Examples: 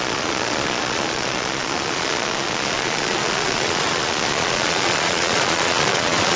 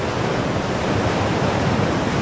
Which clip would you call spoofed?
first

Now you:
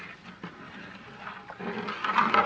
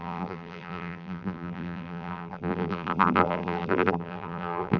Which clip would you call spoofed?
second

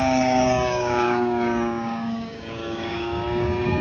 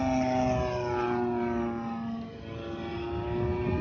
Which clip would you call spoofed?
first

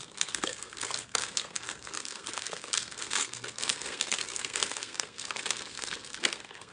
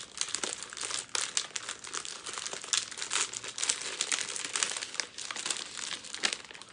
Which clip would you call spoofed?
first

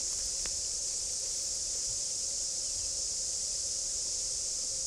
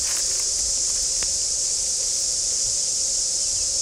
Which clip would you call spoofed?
first